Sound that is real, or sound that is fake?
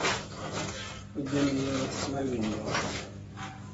real